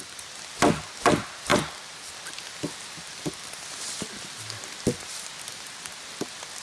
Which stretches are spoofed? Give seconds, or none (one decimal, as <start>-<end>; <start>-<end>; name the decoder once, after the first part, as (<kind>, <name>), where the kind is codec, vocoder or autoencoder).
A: none